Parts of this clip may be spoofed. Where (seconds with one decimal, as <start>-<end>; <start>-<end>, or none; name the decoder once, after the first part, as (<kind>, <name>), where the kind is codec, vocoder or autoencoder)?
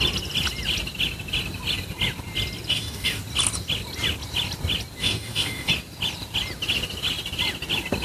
2.7-3.2 (codec, DAC); 5.0-5.7